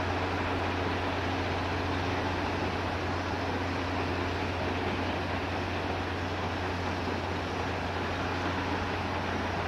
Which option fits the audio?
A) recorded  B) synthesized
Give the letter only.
A